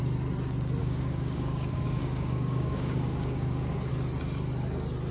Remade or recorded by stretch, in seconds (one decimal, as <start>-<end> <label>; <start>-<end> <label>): 0.0-0.8 recorded; 0.8-3.9 remade; 3.9-5.1 recorded